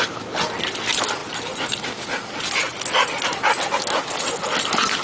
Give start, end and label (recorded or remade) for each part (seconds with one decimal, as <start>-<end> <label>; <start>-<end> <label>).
0.0-5.0 recorded